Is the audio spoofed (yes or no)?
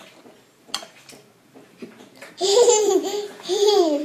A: yes